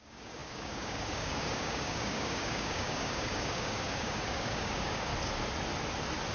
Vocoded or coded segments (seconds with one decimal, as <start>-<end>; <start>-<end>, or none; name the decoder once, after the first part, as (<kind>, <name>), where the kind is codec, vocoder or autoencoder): 0.0-5.1 (codec, DAC)

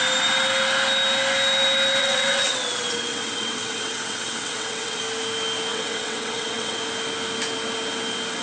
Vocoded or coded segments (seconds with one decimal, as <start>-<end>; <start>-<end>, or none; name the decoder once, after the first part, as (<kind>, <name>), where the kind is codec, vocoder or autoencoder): 2.0-5.0 (vocoder, WaveNeXt); 5.7-6.8

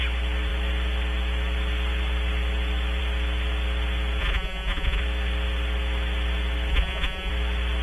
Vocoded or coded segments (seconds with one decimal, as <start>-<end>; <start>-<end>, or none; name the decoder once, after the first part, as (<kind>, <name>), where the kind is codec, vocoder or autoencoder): 4.2-5.0 (vocoder, Vocos); 6.7-7.3